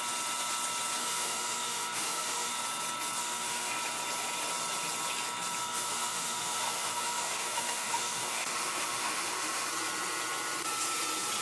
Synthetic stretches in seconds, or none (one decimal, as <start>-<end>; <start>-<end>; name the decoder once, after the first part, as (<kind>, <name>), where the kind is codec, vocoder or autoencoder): 1.0-2.5 (autoencoder, DAC-VAE); 3.2-3.7; 5.6-9.7